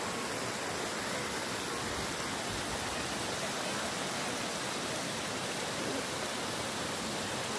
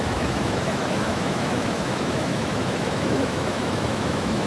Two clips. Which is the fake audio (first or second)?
second